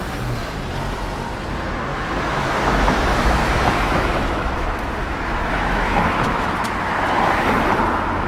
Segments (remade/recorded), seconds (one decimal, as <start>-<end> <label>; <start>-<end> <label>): 0.0-1.9 recorded; 1.9-6.9 remade; 6.9-8.3 recorded